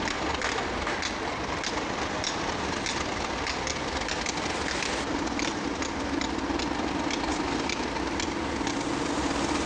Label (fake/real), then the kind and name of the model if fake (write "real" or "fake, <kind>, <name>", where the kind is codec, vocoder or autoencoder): real